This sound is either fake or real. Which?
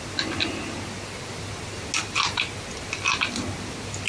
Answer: real